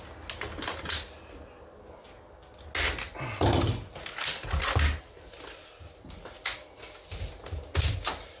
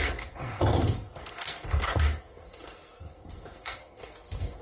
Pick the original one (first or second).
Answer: first